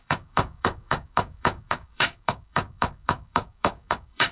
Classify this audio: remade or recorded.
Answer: remade